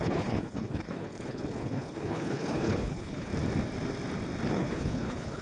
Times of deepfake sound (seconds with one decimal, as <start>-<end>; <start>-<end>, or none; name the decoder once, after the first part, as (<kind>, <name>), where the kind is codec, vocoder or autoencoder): 0.0-3.3 (codec, HILCodec); 4.5-5.4